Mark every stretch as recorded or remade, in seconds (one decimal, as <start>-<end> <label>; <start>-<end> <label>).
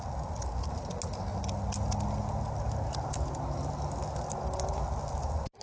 0.0-5.6 recorded